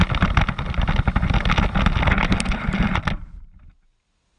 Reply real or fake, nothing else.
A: real